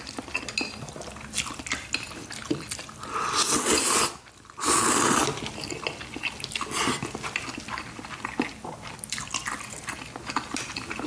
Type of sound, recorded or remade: recorded